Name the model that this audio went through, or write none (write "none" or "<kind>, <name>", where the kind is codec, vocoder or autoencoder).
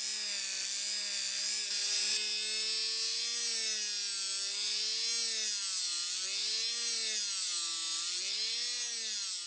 none